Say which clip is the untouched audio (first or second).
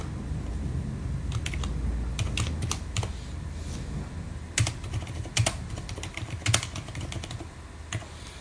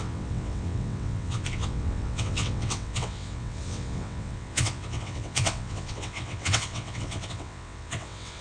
first